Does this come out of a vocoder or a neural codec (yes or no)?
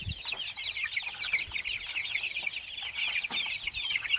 no